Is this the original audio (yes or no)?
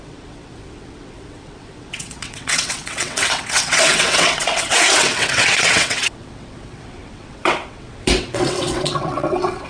no